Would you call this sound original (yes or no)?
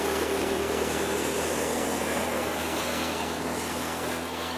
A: no